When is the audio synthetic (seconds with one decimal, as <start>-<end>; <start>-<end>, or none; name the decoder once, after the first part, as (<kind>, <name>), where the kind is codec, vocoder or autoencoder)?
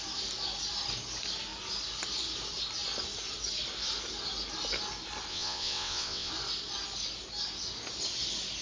5.3-6.3 (vocoder, WaveNeXt)